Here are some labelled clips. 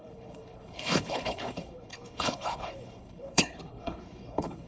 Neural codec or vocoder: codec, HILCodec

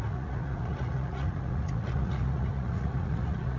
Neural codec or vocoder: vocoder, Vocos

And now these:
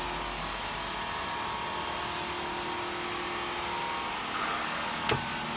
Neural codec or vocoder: none